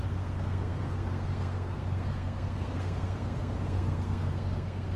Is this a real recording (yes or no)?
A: no